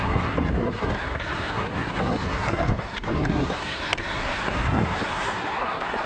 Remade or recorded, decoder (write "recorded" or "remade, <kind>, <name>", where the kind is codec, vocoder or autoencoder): remade, codec, SNAC